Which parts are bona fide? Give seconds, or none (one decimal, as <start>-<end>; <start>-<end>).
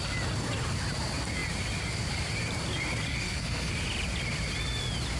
0.0-3.1; 3.7-5.2